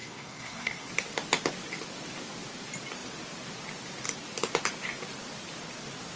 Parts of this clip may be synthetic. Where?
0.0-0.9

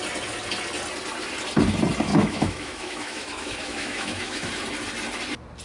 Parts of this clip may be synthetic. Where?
2.1-4.5

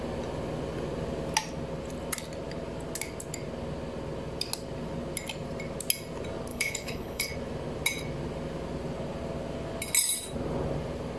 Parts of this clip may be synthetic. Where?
6.5-7.3

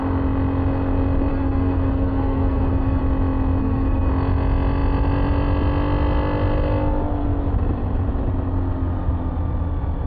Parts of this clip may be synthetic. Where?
1.3-3.0; 3.6-4.1

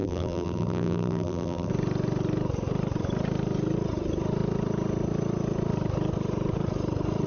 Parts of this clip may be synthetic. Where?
0.0-1.7

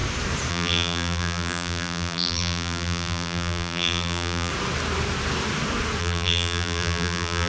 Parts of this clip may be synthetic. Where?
0.5-4.5; 6.0-7.5

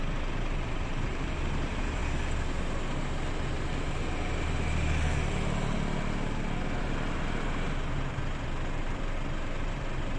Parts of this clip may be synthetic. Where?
0.0-2.0; 6.8-10.2

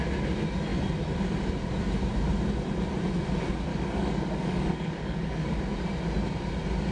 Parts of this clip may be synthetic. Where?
3.7-5.6